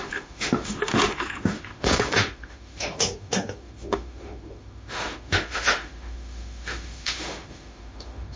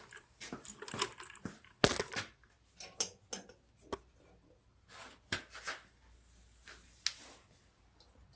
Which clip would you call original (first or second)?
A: second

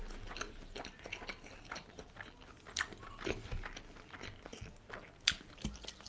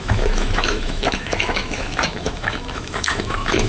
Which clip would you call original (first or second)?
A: first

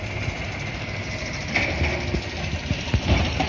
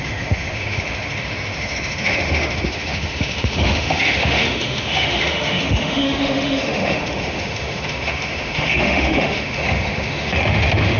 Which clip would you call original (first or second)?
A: first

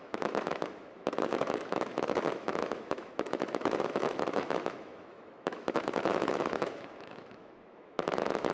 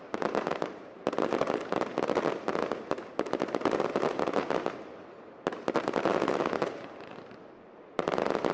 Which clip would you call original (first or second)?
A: second